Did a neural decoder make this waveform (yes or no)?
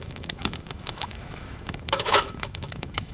yes